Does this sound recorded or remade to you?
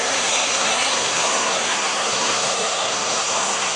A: remade